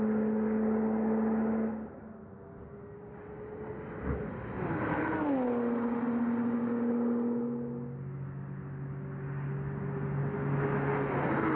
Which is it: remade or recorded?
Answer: recorded